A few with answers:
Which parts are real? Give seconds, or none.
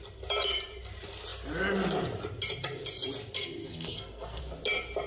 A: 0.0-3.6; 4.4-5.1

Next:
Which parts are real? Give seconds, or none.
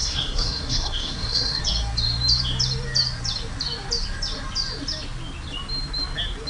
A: 1.6-6.5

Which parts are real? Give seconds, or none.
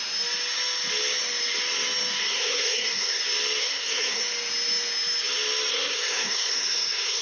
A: 0.0-2.2; 3.2-3.6; 4.2-5.7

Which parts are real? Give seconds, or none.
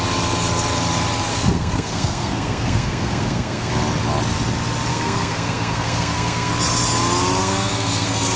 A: 0.0-1.3; 3.7-4.9; 6.5-7.4